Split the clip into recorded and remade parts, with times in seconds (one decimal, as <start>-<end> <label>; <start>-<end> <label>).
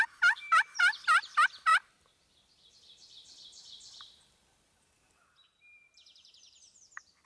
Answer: 0.0-7.3 remade